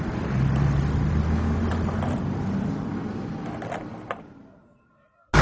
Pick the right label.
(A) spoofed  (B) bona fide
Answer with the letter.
B